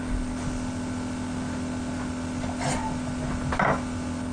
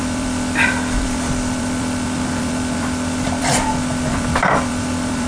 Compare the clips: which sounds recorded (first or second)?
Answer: first